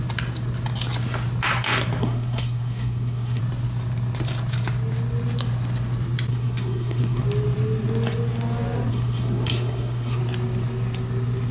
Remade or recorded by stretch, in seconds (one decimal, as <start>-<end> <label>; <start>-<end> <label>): 0.0-2.0 recorded; 2.0-3.4 remade; 3.4-6.3 recorded; 6.3-7.2 remade; 7.2-8.9 recorded; 8.9-10.2 remade; 10.2-11.5 recorded